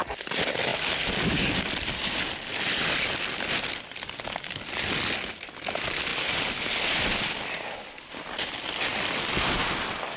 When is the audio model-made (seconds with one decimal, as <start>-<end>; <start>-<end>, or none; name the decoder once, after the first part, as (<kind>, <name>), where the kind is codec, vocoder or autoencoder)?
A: 8.9-9.6 (vocoder, BigVGAN v2)